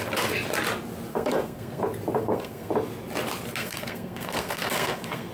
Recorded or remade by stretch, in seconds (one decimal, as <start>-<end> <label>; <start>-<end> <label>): 0.0-1.1 recorded; 1.1-1.8 remade; 1.8-2.2 recorded; 2.2-2.7 remade; 2.7-3.6 recorded; 3.6-5.3 remade